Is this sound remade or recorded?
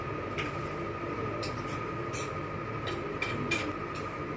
recorded